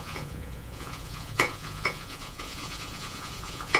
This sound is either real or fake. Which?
fake